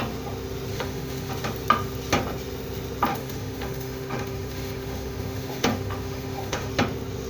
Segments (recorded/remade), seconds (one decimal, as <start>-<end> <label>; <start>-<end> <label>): 0.0-0.7 recorded; 0.7-1.3 remade; 1.3-3.1 recorded; 3.1-6.7 remade; 6.7-7.3 recorded